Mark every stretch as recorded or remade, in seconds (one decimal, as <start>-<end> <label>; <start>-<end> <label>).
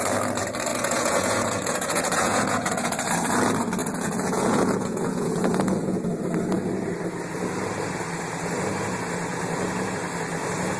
0.0-0.7 recorded; 0.7-3.1 remade; 3.1-3.8 recorded; 3.8-6.0 remade; 6.0-10.8 recorded